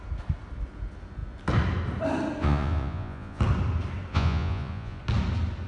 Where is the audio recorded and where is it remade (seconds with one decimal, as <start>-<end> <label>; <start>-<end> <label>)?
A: 0.0-2.4 recorded; 2.4-3.4 remade; 3.4-4.1 recorded; 4.1-5.0 remade; 5.0-5.7 recorded